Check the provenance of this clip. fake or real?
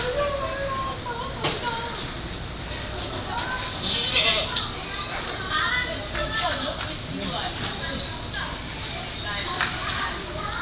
real